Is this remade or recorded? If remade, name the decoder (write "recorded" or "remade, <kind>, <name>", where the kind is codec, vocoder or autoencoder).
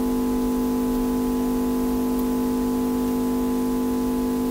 recorded